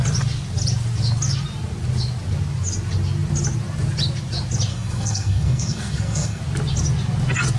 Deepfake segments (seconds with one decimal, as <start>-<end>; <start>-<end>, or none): 4.7-6.4